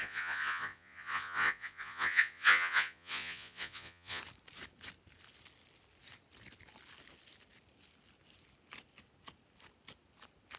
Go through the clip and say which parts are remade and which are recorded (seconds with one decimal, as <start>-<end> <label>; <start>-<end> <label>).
0.0-4.2 remade; 4.2-10.6 recorded

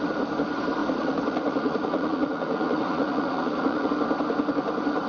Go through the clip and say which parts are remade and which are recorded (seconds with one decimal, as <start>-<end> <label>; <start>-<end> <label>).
0.0-0.8 recorded; 0.8-3.9 remade; 3.9-5.1 recorded

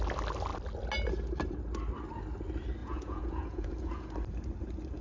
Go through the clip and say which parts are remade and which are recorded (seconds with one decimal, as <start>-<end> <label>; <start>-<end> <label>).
0.0-2.8 recorded; 2.8-4.1 remade; 4.1-5.0 recorded

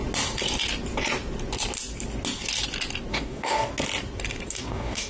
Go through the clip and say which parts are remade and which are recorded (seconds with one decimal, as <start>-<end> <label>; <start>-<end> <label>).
0.0-3.1 recorded; 3.1-3.7 remade; 3.7-4.5 recorded; 4.5-5.1 remade